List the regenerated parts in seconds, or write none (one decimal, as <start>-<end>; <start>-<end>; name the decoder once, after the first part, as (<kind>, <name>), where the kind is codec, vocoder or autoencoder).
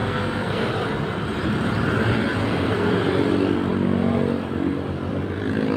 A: 0.0-0.7 (codec, SNAC); 2.4-2.9